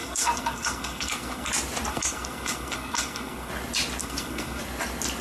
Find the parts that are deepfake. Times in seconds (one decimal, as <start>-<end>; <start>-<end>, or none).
0.0-1.5; 1.9-3.5; 4.0-4.6